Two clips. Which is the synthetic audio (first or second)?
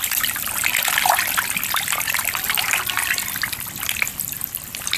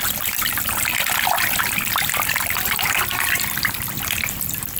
second